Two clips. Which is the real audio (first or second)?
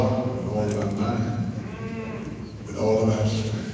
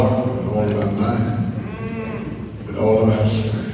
second